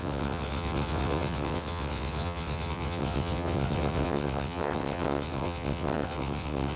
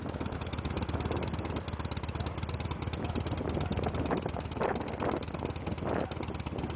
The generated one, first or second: first